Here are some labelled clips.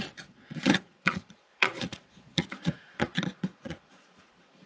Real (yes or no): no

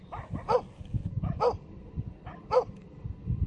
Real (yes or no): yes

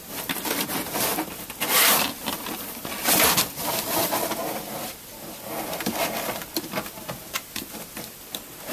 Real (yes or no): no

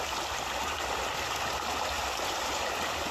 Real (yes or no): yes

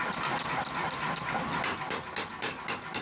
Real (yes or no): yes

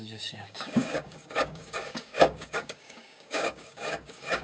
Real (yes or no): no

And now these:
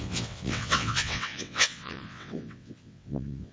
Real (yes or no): no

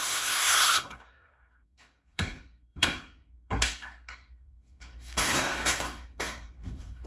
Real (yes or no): no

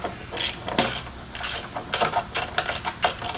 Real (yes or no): yes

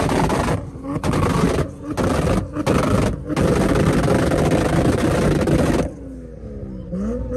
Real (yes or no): yes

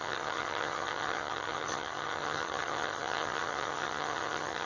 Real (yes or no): no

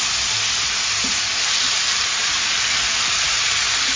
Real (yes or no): yes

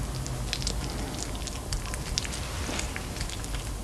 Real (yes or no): yes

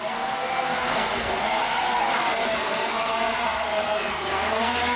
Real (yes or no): no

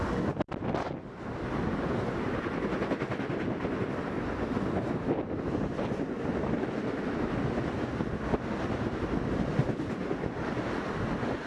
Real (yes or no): yes